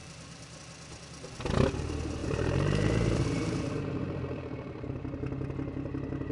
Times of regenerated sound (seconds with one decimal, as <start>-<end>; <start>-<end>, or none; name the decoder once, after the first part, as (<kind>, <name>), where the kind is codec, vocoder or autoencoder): 0.0-0.6 (vocoder, BigVGAN v2); 2.2-4.9